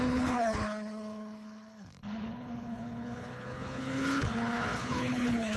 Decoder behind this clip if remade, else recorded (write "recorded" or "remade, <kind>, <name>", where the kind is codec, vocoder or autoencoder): remade, codec, HILCodec